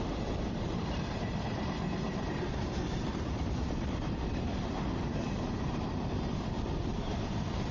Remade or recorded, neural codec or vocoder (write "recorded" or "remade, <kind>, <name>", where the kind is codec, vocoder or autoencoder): remade, vocoder, BigVGAN v2